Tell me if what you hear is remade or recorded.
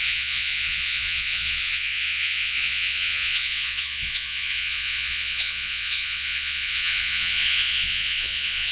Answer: remade